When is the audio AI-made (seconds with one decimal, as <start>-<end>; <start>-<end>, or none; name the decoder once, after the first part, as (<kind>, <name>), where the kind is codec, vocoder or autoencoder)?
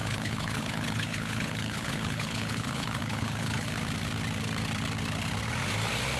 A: 0.0-3.7 (codec, HILCodec)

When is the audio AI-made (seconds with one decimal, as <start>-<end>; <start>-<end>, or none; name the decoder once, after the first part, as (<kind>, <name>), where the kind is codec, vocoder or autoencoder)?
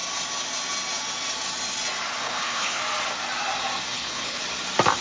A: 2.2-2.8 (codec, HILCodec); 3.9-4.4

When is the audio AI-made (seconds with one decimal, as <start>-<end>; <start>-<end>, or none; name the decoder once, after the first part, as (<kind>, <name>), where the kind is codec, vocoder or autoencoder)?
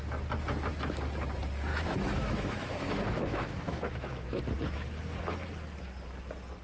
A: 1.7-4.4 (autoencoder, DAC-VAE)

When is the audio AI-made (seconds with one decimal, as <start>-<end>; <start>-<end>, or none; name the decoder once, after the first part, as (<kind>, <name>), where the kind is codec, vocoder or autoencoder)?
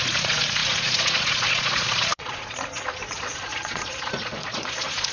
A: 0.0-5.1 (vocoder, Vocos)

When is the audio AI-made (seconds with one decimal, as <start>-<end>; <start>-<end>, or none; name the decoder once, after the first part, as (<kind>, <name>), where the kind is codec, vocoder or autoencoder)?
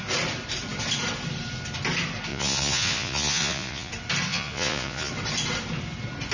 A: 2.3-3.9 (vocoder, Vocos); 4.3-5.1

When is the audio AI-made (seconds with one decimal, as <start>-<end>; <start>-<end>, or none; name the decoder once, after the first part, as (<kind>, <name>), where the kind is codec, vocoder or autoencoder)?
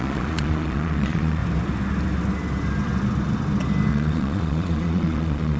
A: 0.0-1.4 (vocoder, Vocos); 3.9-5.6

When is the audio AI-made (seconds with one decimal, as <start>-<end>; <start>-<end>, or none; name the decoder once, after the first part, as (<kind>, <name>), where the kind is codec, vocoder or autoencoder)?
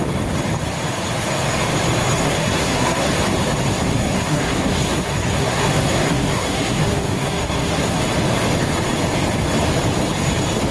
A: 2.2-3.1 (codec, SNAC); 3.7-8.0